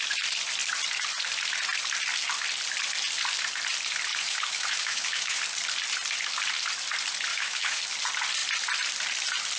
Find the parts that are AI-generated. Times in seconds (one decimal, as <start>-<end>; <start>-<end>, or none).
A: 4.1-5.4; 7.3-7.8